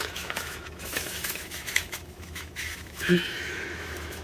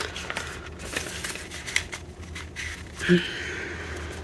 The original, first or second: second